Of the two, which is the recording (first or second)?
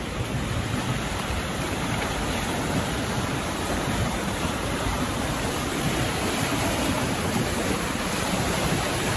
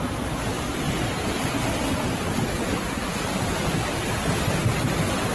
second